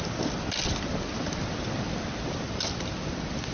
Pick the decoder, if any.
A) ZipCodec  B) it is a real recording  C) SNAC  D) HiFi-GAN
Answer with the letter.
B